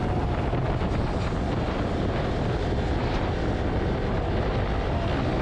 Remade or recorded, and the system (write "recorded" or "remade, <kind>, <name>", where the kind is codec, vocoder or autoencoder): recorded